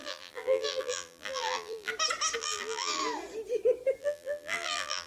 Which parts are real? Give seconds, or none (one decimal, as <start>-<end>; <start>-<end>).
1.9-2.4; 3.0-4.0